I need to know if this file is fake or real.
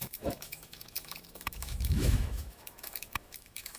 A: fake